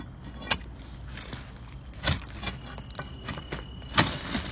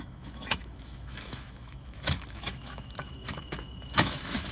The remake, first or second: second